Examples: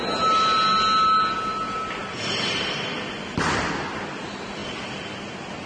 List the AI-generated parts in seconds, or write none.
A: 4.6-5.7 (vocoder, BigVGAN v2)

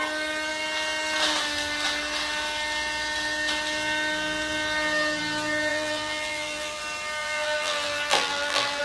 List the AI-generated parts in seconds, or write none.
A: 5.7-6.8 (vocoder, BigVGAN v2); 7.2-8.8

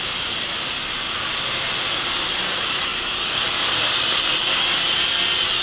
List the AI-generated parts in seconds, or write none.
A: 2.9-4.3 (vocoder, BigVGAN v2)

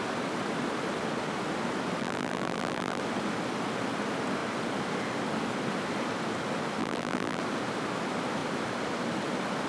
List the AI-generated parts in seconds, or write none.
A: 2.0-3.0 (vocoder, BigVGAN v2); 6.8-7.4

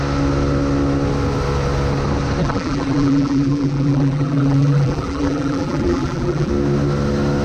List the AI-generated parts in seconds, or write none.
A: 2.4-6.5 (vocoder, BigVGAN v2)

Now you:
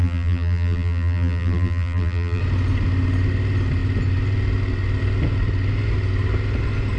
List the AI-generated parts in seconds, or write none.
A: 0.0-2.4 (vocoder, BigVGAN v2)

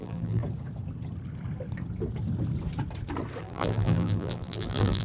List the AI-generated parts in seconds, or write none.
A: 0.0-0.4 (vocoder, BigVGAN v2); 3.4-5.0

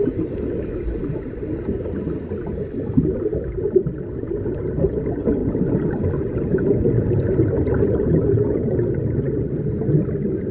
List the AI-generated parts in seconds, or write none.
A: 5.4-8.9 (vocoder, BigVGAN v2)